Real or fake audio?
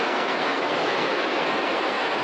fake